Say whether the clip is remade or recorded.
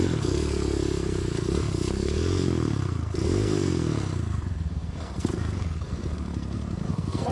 remade